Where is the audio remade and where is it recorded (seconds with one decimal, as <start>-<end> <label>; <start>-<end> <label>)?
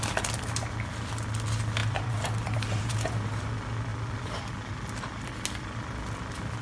0.0-1.8 recorded; 1.8-3.4 remade; 3.4-6.6 recorded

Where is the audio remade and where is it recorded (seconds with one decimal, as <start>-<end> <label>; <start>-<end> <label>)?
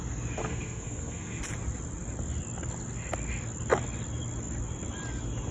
0.0-0.4 recorded; 0.4-1.4 remade; 1.4-5.5 recorded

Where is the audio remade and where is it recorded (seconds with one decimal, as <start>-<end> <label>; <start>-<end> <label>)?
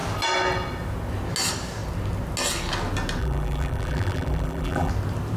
0.0-3.2 recorded; 3.2-4.9 remade; 4.9-5.4 recorded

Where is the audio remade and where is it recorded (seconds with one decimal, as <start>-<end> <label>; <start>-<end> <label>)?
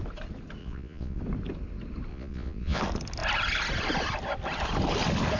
0.0-0.6 recorded; 0.6-1.2 remade; 1.2-2.1 recorded; 2.1-2.8 remade; 2.8-5.4 recorded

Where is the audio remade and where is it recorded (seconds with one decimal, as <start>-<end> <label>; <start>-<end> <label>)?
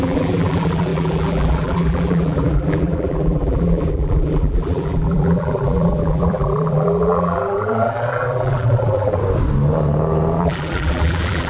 0.0-9.2 remade; 9.2-10.4 recorded; 10.4-11.5 remade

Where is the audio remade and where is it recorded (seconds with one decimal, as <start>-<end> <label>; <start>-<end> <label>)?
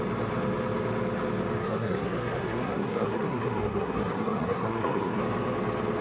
0.0-1.6 recorded; 1.6-5.2 remade; 5.2-6.0 recorded